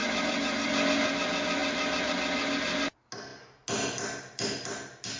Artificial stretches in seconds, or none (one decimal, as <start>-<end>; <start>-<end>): none